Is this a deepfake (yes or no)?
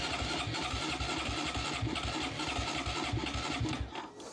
no